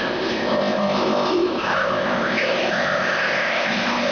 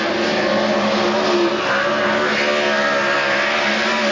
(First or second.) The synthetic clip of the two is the first